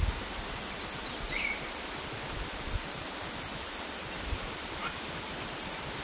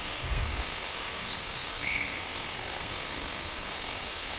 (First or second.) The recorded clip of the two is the first